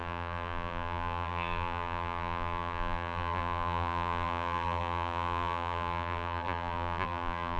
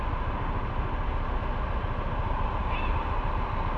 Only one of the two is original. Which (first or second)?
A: second